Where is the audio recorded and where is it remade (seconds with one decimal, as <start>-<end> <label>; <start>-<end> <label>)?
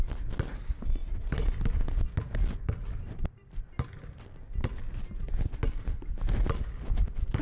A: 0.0-1.0 recorded; 1.0-1.5 remade; 1.5-7.4 recorded